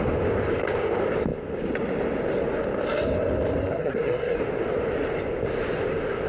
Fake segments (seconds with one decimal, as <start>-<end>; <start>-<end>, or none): 3.6-4.4